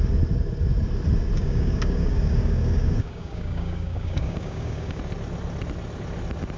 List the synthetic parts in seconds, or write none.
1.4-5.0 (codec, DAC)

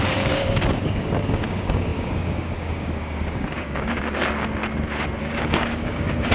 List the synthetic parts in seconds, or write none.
0.0-4.6 (codec, DAC); 5.2-6.3

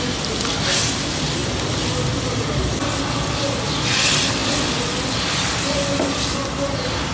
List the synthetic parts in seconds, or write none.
none

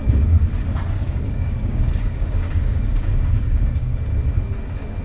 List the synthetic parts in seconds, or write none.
1.0-4.0 (codec, DAC)

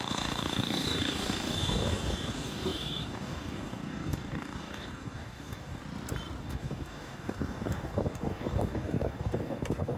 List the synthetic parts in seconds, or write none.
0.0-5.8 (codec, DAC); 6.4-10.0